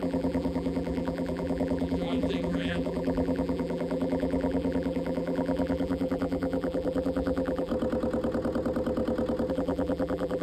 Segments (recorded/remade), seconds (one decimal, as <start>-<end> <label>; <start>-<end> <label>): 0.0-7.7 remade; 7.7-9.5 recorded; 9.5-10.4 remade